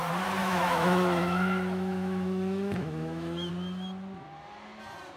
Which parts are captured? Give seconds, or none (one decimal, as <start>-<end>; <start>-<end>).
0.0-0.4; 3.5-5.2